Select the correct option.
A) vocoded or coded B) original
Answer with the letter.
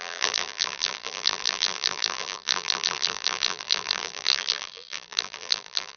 A